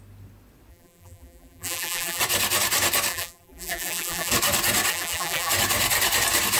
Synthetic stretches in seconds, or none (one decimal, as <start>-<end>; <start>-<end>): 0.7-2.2; 3.1-4.3; 4.9-5.5